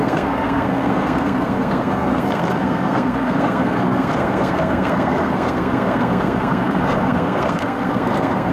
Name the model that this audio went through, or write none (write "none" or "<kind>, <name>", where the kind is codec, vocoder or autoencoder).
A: codec, SNAC